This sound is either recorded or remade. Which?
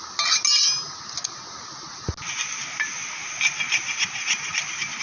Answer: recorded